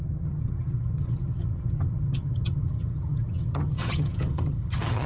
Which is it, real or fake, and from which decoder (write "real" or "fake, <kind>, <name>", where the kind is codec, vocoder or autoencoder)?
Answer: fake, vocoder, HiFi-GAN